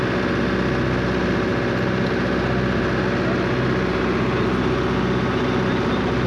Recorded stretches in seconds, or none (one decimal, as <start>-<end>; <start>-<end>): 0.0-6.3